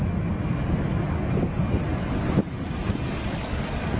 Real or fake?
real